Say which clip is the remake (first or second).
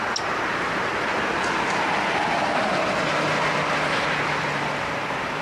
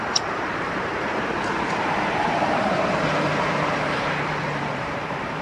second